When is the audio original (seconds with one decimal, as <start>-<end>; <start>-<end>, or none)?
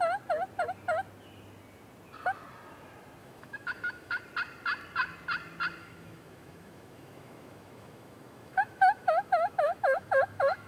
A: 0.0-3.2; 4.2-5.8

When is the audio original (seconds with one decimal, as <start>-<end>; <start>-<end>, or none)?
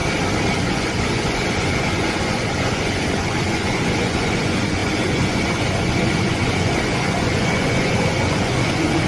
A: 0.0-0.5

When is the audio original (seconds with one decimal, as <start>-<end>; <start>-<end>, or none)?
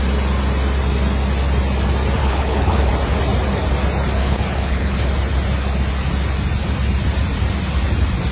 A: 0.0-2.2; 2.9-4.2; 5.1-8.3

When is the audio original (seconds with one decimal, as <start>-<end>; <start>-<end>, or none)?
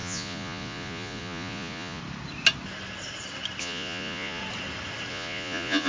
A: 2.0-3.6; 4.4-5.1